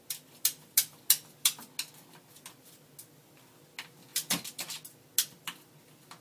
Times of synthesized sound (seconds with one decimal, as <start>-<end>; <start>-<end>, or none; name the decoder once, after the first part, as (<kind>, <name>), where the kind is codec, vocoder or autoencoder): none